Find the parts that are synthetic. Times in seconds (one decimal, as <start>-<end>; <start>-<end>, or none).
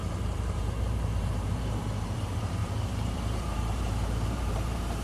0.0-5.0